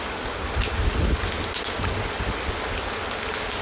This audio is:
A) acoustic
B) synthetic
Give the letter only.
A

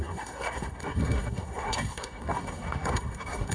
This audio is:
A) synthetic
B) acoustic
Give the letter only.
A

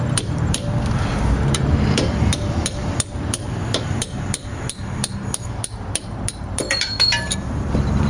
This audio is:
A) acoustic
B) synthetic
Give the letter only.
B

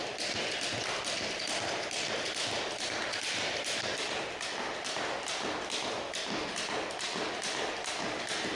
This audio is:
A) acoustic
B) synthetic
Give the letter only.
B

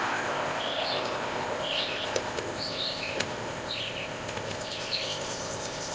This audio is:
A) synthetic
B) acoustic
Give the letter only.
A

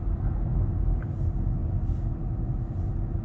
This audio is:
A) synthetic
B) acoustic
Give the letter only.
B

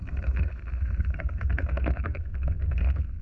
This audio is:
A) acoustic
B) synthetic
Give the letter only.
B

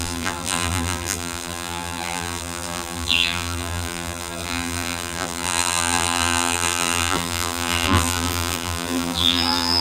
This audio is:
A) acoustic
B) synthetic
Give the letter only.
B